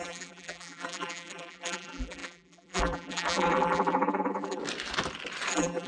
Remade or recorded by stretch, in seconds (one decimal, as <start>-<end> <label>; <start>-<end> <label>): 0.0-4.6 remade; 4.6-5.5 recorded; 5.5-5.9 remade